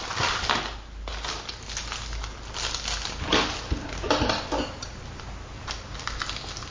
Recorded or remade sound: recorded